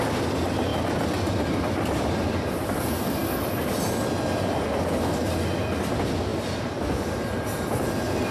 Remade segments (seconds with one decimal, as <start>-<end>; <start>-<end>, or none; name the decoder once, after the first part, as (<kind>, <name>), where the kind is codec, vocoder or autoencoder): none